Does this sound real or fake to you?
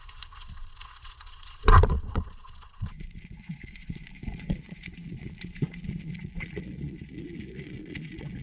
fake